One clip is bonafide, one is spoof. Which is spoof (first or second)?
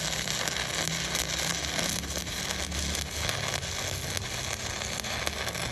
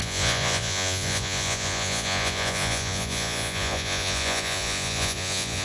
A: second